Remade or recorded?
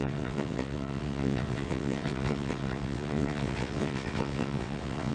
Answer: remade